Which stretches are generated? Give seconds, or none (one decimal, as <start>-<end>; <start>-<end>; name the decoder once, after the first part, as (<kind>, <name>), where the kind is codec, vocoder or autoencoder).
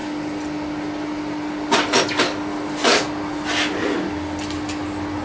none